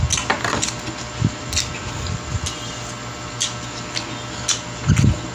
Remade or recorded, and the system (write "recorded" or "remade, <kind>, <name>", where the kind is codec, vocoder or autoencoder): recorded